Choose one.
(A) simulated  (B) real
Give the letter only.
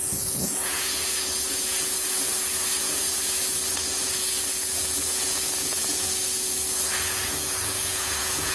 A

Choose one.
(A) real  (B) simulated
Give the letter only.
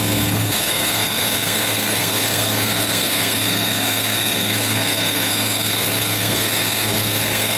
B